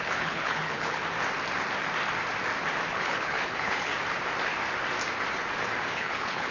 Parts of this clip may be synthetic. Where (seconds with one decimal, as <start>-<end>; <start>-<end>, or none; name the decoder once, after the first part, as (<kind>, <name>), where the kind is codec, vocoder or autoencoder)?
0.0-1.0 (codec, HILCodec); 2.9-3.9; 5.9-6.5